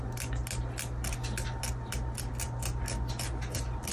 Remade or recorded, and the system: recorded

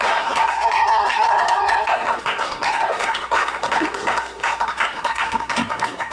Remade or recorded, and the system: remade, codec, SNAC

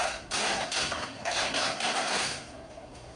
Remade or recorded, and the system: remade, codec, SNAC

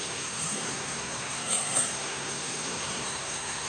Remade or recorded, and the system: remade, codec, SNAC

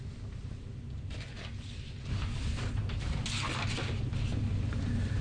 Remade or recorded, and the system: recorded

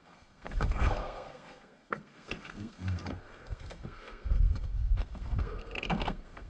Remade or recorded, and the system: remade, codec, SNAC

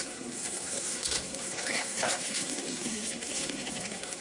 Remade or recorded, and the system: remade, codec, SNAC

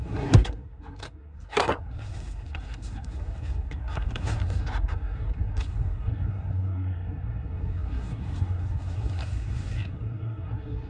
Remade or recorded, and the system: remade, codec, SNAC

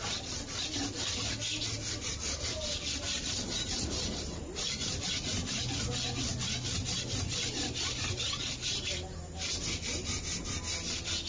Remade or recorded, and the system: recorded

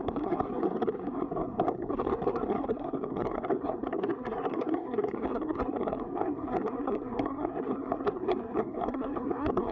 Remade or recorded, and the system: remade, codec, SNAC